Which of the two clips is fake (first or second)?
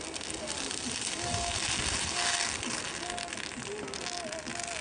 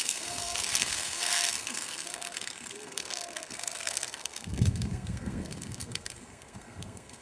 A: second